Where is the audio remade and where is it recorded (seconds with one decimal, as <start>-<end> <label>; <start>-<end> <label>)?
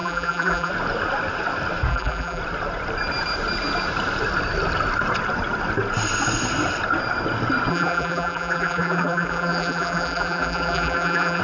0.0-0.7 remade; 0.7-1.9 recorded; 1.9-2.4 remade; 2.4-7.7 recorded; 7.7-11.4 remade